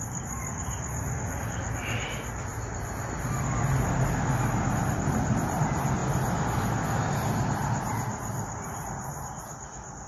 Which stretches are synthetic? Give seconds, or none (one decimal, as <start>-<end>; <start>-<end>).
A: none